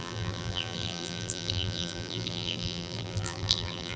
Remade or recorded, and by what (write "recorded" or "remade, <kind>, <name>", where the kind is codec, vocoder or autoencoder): remade, vocoder, BigVGAN v2